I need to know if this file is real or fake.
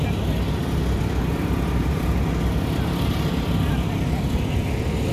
real